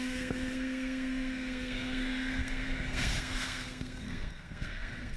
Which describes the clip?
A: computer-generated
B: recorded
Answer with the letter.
A